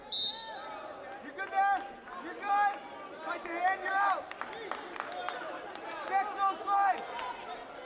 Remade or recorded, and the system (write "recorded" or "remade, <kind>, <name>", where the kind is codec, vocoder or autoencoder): recorded